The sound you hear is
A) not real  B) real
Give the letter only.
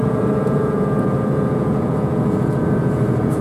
A